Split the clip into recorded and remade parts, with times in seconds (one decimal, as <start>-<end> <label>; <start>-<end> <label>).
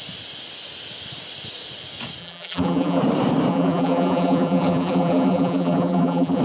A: 0.0-2.2 recorded; 2.2-3.0 remade; 3.0-3.5 recorded; 3.5-6.4 remade